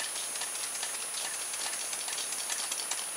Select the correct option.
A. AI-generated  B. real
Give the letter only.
B